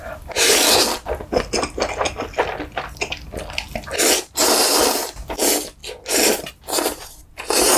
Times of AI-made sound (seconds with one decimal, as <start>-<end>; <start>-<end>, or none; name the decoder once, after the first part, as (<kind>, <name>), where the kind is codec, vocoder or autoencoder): none